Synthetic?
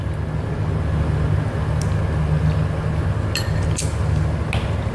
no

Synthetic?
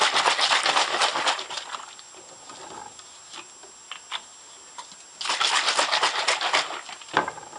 no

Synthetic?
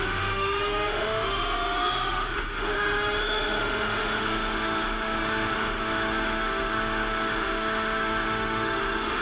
yes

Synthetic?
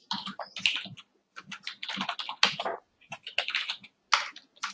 no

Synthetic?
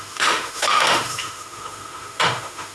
yes